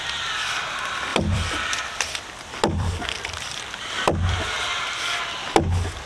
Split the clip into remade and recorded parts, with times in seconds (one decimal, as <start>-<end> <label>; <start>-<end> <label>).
0.0-1.1 recorded; 1.1-4.8 remade; 4.8-6.1 recorded